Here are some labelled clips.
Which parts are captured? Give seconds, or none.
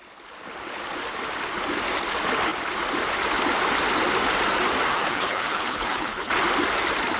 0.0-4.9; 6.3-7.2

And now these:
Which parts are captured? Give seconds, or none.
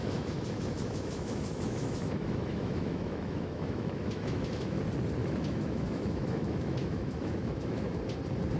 4.8-5.2; 8.0-8.6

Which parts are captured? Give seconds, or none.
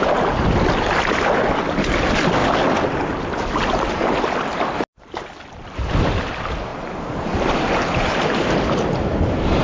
0.0-6.7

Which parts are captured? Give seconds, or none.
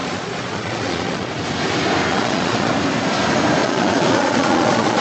1.3-2.1; 2.7-3.6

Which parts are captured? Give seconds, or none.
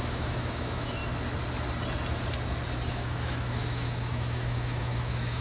1.0-2.9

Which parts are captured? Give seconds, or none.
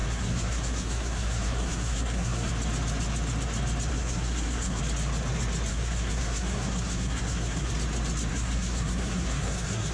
2.5-3.9; 4.8-5.7; 7.7-8.3